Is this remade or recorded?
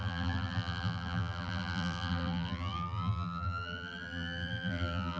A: remade